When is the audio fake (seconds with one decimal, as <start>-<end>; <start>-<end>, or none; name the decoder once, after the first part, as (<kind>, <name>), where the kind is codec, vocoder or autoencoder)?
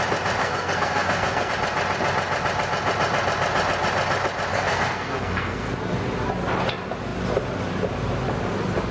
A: 0.4-1.5 (codec, SNAC); 4.5-5.7